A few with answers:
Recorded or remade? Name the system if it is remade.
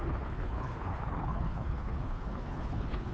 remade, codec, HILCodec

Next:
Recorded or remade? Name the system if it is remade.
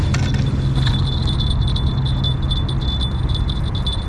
recorded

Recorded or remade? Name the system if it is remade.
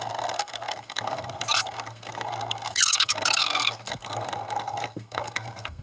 remade, codec, SNAC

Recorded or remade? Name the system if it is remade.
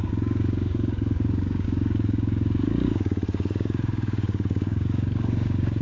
remade, codec, DAC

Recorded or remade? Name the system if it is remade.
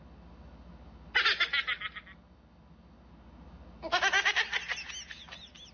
recorded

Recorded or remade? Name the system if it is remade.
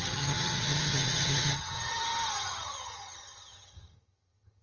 remade, vocoder, HiFi-GAN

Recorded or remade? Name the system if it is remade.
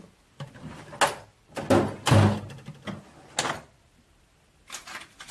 recorded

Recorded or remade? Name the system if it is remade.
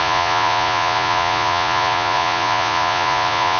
remade, vocoder, Vocos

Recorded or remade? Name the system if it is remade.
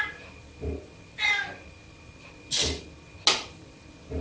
recorded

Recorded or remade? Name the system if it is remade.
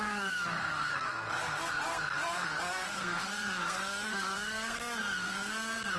remade, codec, SNAC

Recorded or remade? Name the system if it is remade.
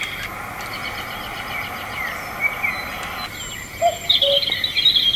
recorded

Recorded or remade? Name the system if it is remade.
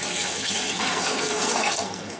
remade, codec, SNAC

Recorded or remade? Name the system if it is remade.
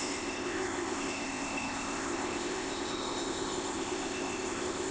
remade, codec, ZipCodec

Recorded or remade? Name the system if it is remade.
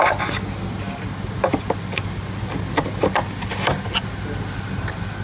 recorded